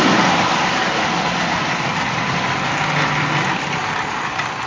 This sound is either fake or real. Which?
real